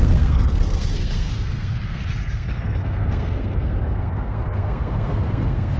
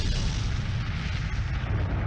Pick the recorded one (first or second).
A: second